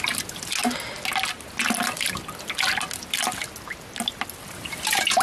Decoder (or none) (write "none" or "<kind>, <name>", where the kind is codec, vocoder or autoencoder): none